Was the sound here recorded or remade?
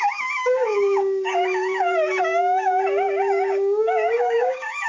remade